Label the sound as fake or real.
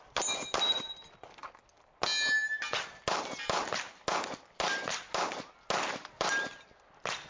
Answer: real